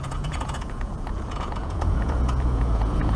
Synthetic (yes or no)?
yes